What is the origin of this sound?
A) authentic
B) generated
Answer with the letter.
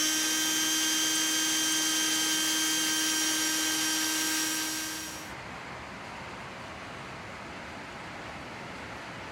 A